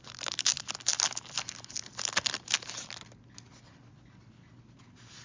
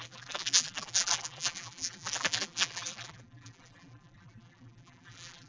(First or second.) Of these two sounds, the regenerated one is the second